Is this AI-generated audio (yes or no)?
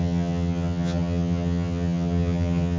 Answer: yes